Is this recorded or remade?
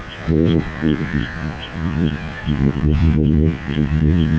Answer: remade